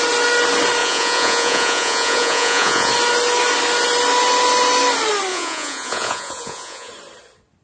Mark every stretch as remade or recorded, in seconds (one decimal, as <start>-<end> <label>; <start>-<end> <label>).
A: 0.0-0.8 recorded; 0.8-2.9 remade; 2.9-5.3 recorded; 5.3-6.9 remade; 6.9-7.6 recorded